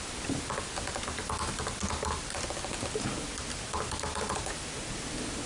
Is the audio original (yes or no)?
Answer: yes